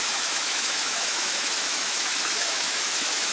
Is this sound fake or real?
fake